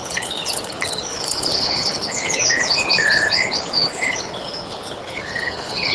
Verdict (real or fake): fake